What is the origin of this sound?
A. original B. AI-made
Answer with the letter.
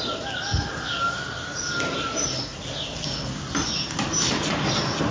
A